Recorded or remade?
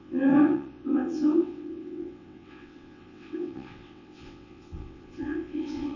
remade